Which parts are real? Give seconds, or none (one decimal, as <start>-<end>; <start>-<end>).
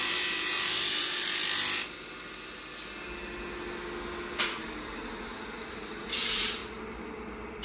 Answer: 1.4-5.7; 6.6-7.6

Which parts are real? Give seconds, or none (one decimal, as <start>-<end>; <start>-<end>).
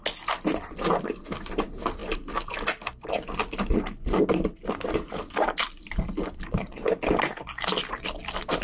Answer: 0.0-7.8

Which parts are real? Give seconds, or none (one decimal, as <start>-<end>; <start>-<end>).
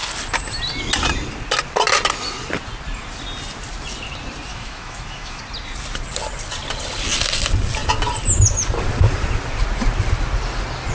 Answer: 0.0-4.5; 5.4-10.9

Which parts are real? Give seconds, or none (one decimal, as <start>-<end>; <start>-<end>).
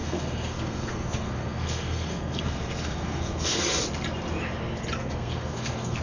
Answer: 3.6-5.0